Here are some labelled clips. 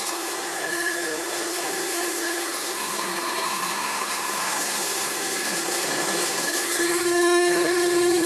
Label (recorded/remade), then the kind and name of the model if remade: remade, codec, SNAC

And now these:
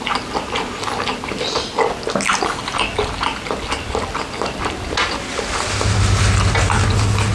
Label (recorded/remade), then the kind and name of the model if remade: recorded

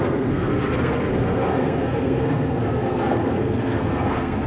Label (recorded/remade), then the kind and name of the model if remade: remade, codec, SNAC